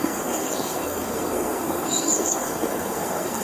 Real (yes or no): no